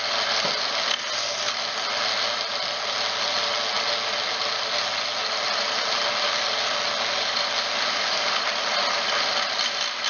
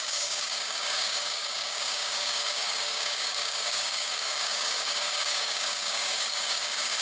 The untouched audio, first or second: first